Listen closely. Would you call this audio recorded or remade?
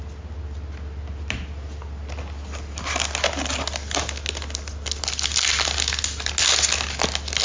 recorded